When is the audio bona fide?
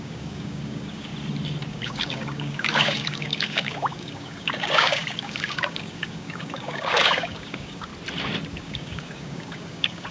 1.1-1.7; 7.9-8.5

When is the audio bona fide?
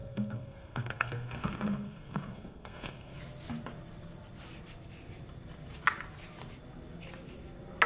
3.2-7.9